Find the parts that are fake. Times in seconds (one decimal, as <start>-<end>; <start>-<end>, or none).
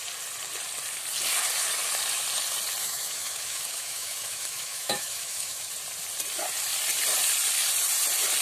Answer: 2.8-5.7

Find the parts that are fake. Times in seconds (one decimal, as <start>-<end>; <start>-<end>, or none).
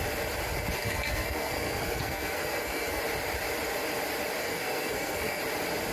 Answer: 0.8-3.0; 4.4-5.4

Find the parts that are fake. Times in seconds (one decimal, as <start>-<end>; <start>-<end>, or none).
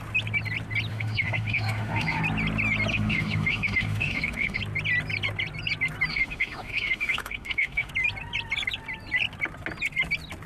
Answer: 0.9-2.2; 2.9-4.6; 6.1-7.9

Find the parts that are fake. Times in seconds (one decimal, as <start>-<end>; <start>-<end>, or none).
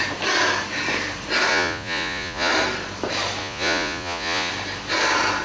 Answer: 1.5-2.5; 3.4-4.5